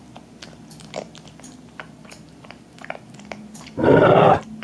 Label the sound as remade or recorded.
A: recorded